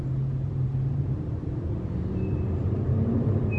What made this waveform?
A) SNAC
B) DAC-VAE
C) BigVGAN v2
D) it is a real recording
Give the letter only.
C